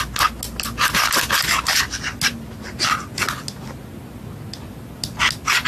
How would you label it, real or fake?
real